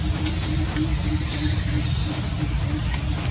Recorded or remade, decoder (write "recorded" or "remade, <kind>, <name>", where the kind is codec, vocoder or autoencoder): recorded